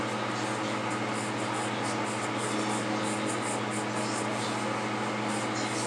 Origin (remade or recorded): recorded